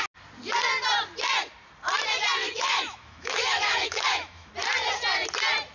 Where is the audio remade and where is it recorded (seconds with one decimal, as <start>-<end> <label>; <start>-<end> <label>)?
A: 0.0-2.4 recorded; 2.4-4.5 remade; 4.5-5.7 recorded